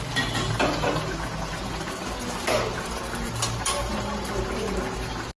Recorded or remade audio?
recorded